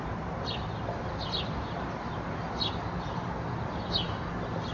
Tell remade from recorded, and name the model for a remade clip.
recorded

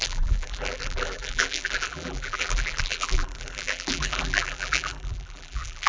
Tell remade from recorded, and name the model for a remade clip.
remade, vocoder, BigVGAN v2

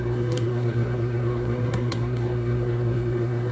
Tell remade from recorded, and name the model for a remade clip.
remade, codec, SNAC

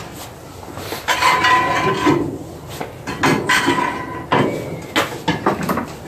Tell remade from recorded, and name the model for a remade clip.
recorded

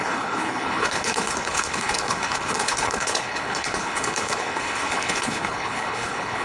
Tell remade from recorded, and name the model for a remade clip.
remade, codec, HILCodec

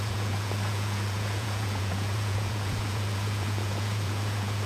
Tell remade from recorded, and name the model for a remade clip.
remade, vocoder, Vocos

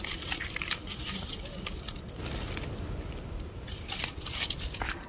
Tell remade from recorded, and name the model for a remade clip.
recorded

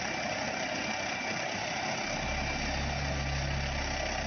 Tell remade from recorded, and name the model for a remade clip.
recorded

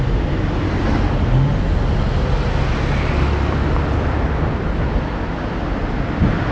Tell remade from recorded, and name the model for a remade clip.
recorded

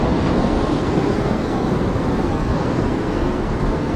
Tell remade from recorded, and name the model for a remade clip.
remade, codec, SNAC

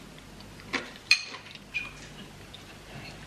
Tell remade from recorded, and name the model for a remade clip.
recorded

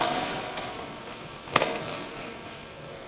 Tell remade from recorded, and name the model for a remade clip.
remade, codec, SNAC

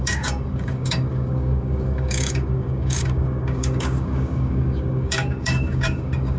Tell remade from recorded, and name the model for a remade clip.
remade, codec, DAC